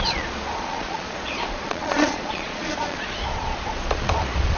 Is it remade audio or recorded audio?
remade